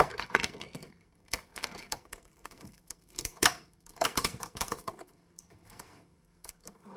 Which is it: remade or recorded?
remade